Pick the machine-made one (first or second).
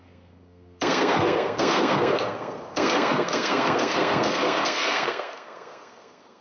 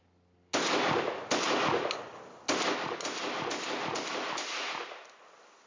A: first